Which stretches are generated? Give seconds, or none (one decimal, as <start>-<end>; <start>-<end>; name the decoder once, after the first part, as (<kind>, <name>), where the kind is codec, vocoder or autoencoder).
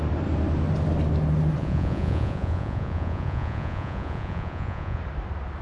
1.6-5.0 (vocoder, Vocos)